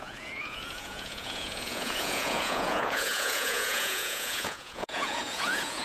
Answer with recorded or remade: remade